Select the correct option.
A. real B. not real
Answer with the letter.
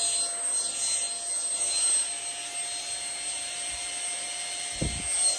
A